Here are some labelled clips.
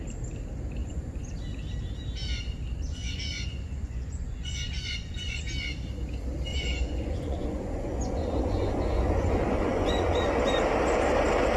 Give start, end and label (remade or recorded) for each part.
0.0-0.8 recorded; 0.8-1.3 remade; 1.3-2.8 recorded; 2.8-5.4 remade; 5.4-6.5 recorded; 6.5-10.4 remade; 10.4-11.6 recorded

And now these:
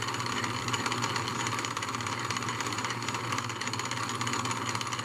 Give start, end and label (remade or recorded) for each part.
0.0-1.3 recorded; 1.3-3.5 remade; 3.5-5.0 recorded

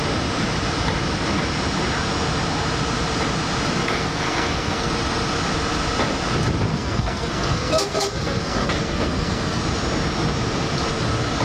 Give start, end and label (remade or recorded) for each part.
0.0-3.8 recorded; 3.8-4.9 remade; 4.9-6.7 recorded; 6.7-9.6 remade; 9.6-11.4 recorded

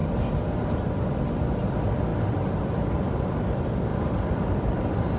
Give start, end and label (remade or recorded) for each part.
0.0-5.2 recorded

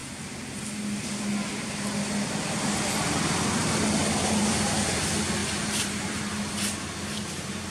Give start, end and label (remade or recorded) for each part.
0.0-4.0 recorded; 4.0-5.0 remade; 5.0-5.4 recorded; 5.4-6.8 remade; 6.8-7.7 recorded

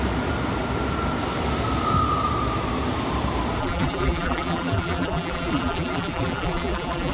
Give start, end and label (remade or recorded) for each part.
0.0-3.6 recorded; 3.6-7.1 remade